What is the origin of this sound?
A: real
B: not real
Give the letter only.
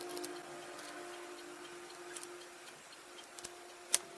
A